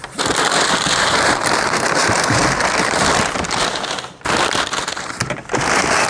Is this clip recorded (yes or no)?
no